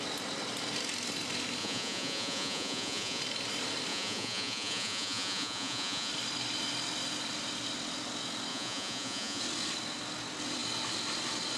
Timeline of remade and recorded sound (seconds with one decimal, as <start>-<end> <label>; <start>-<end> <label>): 0.0-1.6 recorded; 1.6-3.2 remade; 3.2-3.9 recorded; 3.9-6.1 remade; 6.1-8.5 recorded; 8.5-9.4 remade; 9.4-11.6 recorded